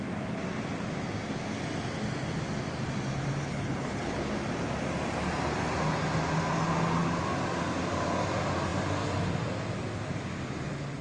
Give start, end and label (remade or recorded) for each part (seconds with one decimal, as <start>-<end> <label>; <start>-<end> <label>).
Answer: 0.0-3.4 recorded; 3.4-4.3 remade; 4.3-11.0 recorded